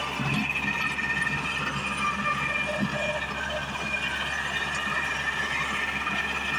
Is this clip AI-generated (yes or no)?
no